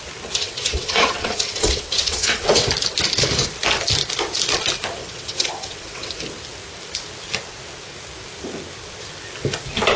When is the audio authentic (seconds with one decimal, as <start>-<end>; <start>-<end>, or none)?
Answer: 0.0-0.4; 2.7-5.0; 6.1-10.0